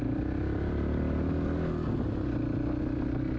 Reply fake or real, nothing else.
real